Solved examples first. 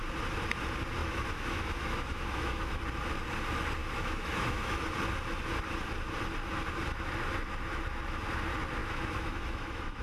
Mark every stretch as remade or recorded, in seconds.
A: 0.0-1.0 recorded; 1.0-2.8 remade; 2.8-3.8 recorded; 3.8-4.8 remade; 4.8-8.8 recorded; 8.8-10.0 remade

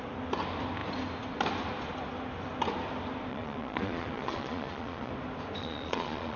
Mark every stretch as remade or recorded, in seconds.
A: 0.0-3.3 recorded; 3.3-5.1 remade; 5.1-5.6 recorded; 5.6-6.4 remade

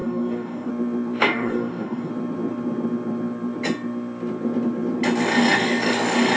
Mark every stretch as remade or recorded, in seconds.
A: 0.0-0.7 remade; 0.7-1.2 recorded; 1.2-2.1 remade; 2.1-6.4 recorded

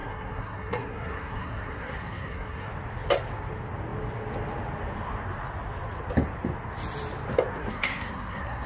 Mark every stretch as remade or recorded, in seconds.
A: 0.0-2.7 remade; 2.7-7.6 recorded; 7.6-8.7 remade

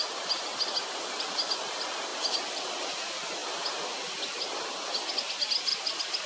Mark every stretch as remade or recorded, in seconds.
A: 0.0-5.7 recorded; 5.7-6.3 remade

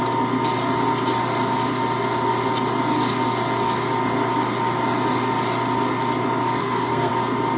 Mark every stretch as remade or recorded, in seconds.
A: 0.0-6.6 recorded; 6.6-7.1 remade; 7.1-7.6 recorded

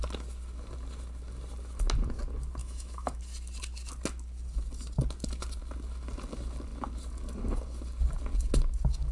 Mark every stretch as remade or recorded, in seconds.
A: 0.0-2.6 recorded; 2.6-3.2 remade; 3.2-9.1 recorded